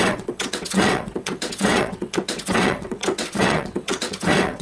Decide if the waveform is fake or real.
fake